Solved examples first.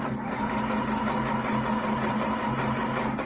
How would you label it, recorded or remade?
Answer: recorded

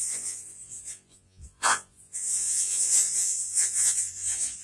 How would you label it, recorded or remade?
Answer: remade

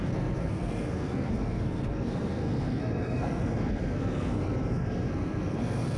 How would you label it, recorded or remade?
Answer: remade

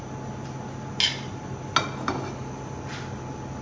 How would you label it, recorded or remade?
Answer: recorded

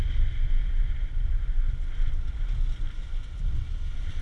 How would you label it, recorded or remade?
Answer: recorded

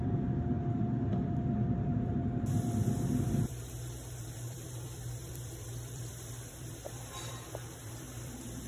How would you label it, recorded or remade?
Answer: remade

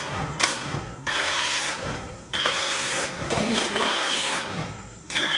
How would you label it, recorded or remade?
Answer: remade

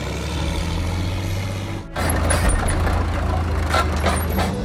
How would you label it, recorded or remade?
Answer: recorded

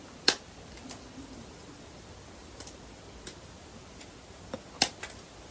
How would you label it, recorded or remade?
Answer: recorded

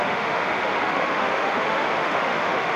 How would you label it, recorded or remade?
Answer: remade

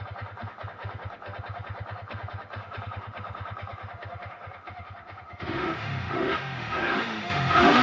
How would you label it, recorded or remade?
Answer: remade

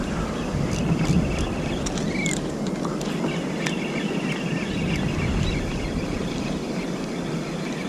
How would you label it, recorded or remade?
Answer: recorded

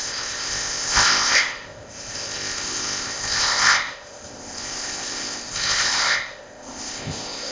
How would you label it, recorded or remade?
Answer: remade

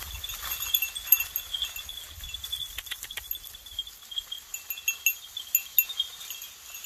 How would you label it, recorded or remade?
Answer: recorded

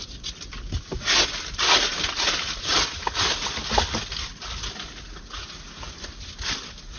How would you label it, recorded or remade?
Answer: recorded